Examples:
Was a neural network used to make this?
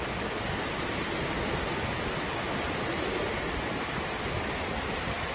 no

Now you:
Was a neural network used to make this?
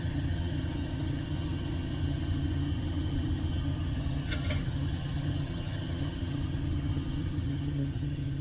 yes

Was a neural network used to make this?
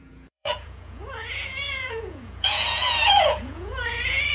yes